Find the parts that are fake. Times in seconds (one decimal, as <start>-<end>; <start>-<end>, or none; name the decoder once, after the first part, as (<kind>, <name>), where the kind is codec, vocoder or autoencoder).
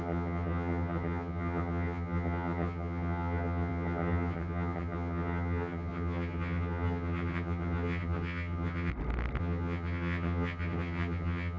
0.0-8.9 (vocoder, HiFi-GAN); 9.4-11.6